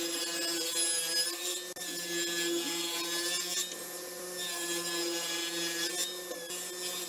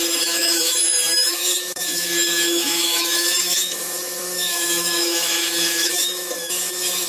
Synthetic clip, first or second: second